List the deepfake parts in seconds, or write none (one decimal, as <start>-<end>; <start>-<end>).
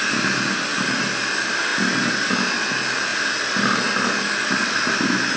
none